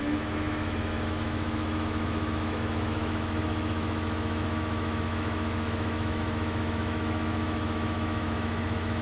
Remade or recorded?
remade